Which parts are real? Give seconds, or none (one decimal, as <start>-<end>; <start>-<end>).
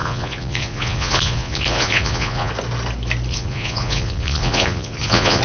2.5-3.3